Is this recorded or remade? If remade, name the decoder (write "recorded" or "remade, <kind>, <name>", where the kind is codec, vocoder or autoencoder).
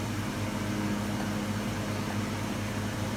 recorded